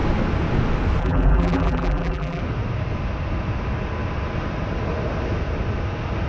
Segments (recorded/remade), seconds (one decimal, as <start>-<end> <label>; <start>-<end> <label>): 0.0-1.0 recorded; 1.0-2.4 remade; 2.4-6.3 recorded